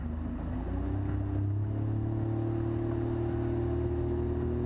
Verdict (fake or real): real